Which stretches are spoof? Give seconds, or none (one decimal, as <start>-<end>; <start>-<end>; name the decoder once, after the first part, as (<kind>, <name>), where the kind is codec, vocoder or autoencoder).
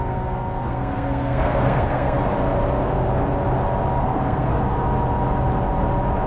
0.0-2.2 (codec, SNAC); 4.0-4.5